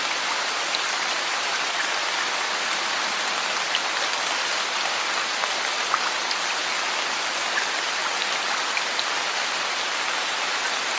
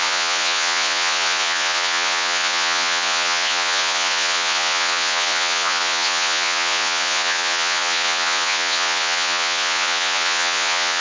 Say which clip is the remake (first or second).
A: second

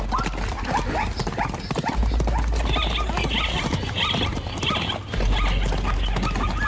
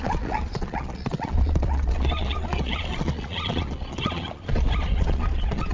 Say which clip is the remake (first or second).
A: second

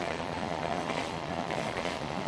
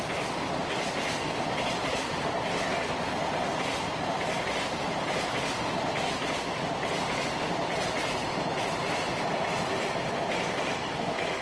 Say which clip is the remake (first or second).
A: first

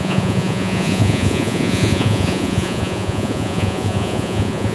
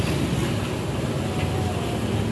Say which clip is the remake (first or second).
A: first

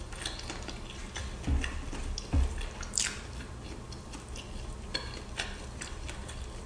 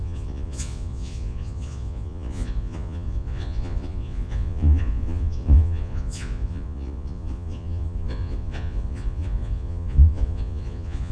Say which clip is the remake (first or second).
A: second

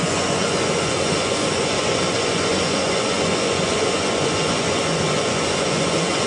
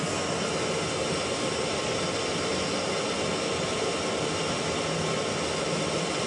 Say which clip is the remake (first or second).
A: first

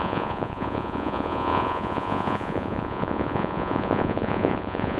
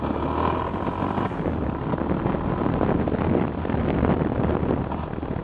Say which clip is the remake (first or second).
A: first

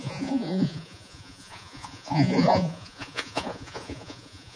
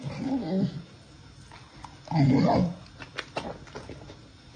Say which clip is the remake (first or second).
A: first